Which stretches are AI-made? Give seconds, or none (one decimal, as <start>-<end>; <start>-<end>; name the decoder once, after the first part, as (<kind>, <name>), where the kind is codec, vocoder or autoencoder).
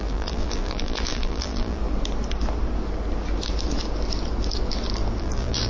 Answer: 0.0-1.8 (vocoder, BigVGAN v2); 5.2-5.7